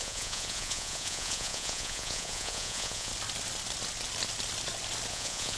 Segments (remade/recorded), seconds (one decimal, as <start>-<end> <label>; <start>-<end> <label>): 0.0-3.1 remade; 3.1-5.1 recorded; 5.1-5.6 remade